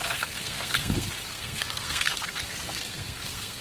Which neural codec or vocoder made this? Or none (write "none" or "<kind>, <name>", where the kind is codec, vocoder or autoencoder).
codec, SNAC